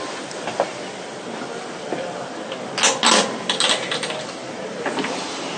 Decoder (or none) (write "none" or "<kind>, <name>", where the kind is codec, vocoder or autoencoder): none